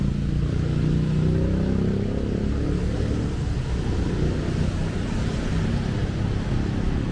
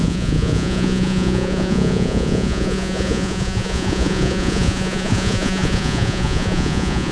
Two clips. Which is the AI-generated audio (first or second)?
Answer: second